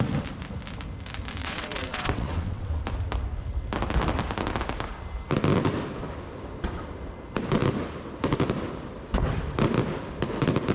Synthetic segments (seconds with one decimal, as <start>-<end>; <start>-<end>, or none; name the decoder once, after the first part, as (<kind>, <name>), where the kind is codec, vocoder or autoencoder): 1.4-2.8 (vocoder, WaveNeXt)